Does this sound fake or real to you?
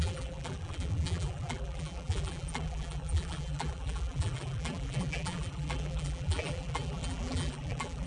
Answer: fake